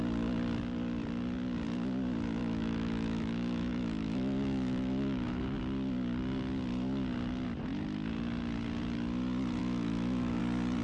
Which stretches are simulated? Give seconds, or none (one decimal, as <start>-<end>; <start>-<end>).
2.4-5.4; 9.6-10.4